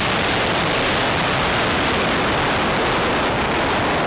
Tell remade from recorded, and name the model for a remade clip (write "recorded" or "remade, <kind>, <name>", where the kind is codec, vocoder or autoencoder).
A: recorded